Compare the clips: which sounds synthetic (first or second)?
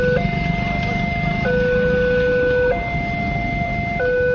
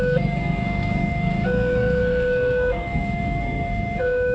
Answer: second